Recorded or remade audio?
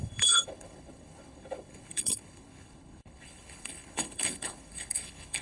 remade